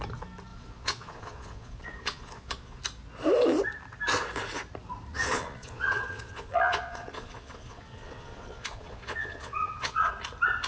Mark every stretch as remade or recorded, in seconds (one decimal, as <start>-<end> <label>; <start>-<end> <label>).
0.0-0.5 recorded; 0.5-2.8 remade; 2.8-5.1 recorded; 5.1-10.1 remade; 10.1-10.7 recorded